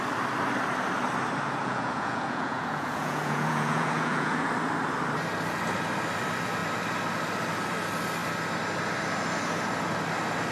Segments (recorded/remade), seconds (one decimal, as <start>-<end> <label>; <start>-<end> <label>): 0.0-1.6 recorded; 1.6-4.5 remade; 4.5-10.5 recorded